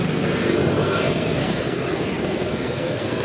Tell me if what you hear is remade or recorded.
remade